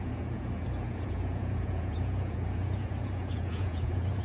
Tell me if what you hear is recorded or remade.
remade